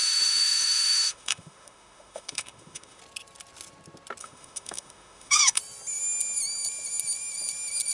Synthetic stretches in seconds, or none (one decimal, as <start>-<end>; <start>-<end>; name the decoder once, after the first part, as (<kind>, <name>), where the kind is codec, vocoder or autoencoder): 0.0-3.0 (autoencoder, DAC-VAE); 4.2-5.6

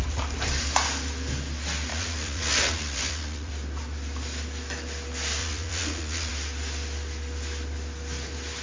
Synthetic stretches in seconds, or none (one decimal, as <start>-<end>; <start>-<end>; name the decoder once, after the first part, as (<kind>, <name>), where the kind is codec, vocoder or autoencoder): 1.9-3.5 (vocoder, Vocos); 5.4-6.3

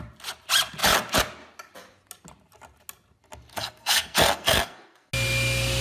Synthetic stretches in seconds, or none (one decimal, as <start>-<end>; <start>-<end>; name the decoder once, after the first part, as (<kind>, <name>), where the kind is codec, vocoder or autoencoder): 3.5-5.1 (codec, SNAC)

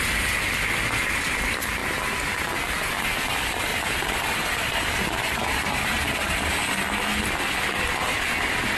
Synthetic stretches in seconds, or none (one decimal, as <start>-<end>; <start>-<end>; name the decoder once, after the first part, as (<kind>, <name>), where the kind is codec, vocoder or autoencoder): 3.7-6.5 (vocoder, BigVGAN v2)

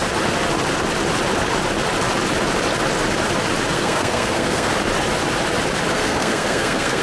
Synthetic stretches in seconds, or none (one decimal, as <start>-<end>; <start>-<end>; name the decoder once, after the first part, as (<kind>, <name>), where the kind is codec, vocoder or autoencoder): 3.7-4.7 (codec, SNAC); 5.9-7.0

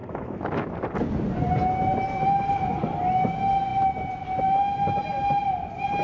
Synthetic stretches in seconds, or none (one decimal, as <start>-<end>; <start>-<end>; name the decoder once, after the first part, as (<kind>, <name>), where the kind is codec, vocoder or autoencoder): 0.0-0.7 (autoencoder, DAC-VAE)